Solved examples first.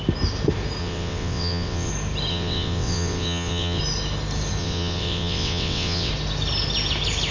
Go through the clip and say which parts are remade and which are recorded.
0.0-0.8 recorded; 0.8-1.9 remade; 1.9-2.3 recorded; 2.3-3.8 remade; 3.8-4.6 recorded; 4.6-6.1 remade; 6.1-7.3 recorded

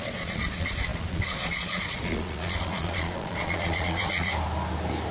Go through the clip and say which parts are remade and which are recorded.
0.0-4.3 remade; 4.3-5.1 recorded

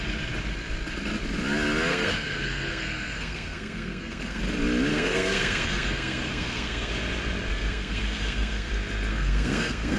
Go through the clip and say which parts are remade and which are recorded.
0.0-1.9 recorded; 1.9-4.4 remade; 4.4-4.9 recorded; 4.9-6.9 remade; 6.9-7.5 recorded; 7.5-8.7 remade; 8.7-9.1 recorded; 9.1-10.0 remade

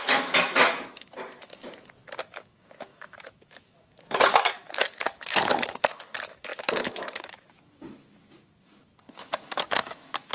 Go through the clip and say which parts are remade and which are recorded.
0.0-1.5 remade; 1.5-2.2 recorded; 2.2-10.3 remade

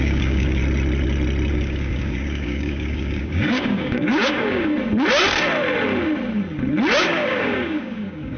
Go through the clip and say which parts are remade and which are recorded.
0.0-0.6 remade; 0.6-1.5 recorded; 1.5-4.7 remade; 4.7-7.0 recorded; 7.0-8.4 remade